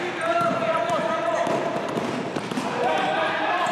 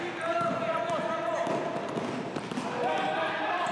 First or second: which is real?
second